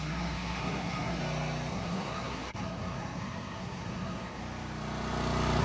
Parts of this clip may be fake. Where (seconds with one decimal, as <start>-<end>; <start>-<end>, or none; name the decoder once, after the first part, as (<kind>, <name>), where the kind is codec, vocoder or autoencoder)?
0.0-1.2 (codec, SNAC); 1.7-4.4